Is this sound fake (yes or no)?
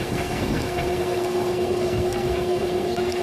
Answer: yes